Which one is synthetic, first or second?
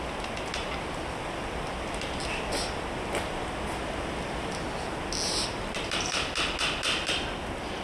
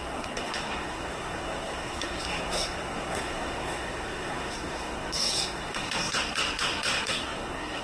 second